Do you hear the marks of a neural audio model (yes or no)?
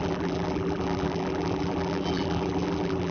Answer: yes